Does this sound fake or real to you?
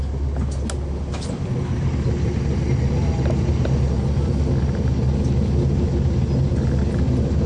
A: real